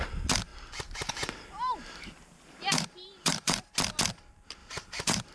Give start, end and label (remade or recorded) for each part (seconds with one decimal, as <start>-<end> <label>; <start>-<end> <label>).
0.0-0.5 recorded; 0.5-3.7 remade; 3.7-4.6 recorded; 4.6-5.3 remade